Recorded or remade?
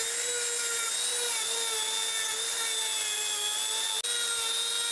recorded